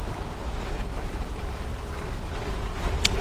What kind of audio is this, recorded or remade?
recorded